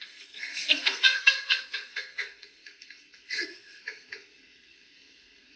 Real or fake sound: fake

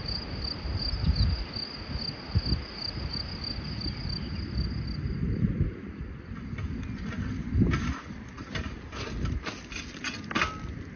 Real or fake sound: real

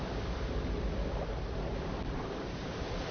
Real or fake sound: real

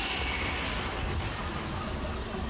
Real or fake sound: real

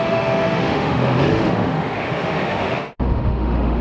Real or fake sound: fake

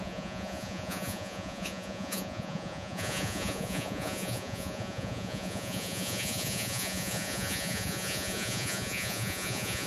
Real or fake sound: fake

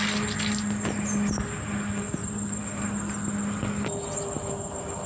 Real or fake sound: real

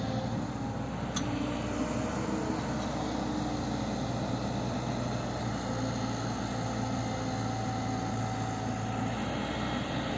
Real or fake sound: real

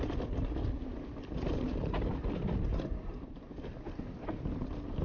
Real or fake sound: real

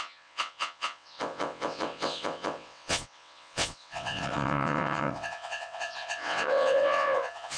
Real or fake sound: fake